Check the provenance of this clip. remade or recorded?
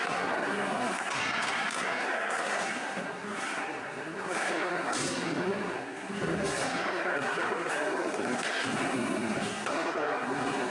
remade